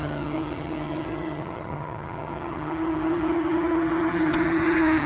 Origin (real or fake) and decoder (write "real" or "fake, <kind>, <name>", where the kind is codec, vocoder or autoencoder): fake, vocoder, HiFi-GAN